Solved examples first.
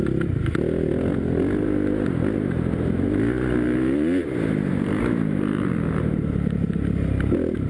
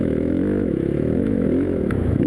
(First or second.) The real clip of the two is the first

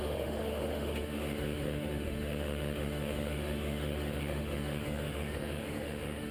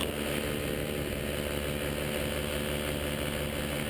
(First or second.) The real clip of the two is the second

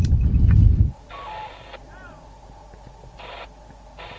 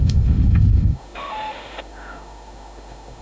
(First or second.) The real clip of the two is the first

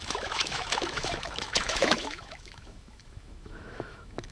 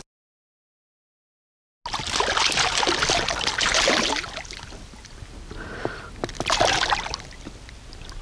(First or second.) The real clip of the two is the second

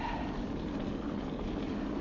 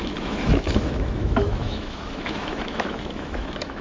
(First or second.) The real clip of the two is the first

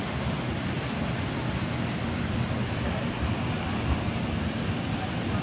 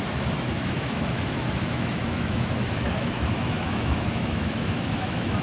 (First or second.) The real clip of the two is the first